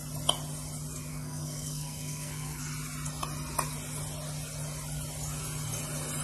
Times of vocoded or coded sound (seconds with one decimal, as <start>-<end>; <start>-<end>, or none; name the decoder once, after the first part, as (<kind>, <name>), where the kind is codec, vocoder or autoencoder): 1.1-2.6 (codec, SNAC)